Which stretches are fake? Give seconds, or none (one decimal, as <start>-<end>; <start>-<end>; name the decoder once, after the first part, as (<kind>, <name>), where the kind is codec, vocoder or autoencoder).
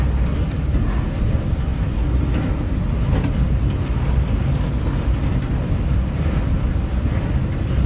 none